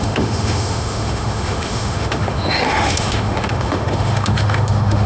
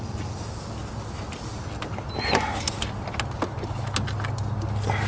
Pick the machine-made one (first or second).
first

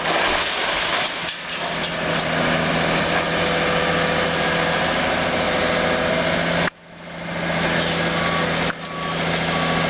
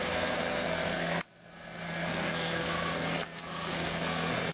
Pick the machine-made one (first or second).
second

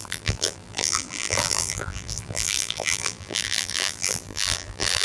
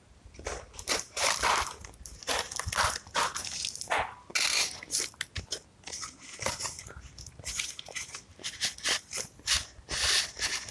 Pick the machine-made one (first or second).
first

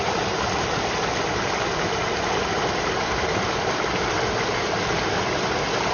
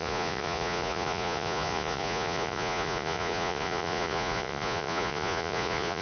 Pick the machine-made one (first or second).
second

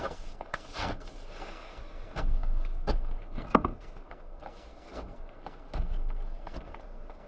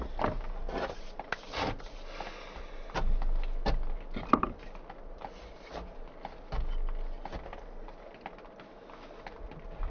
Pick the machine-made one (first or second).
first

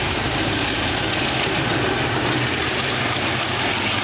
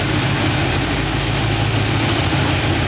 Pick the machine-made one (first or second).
first